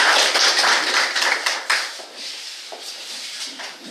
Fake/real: real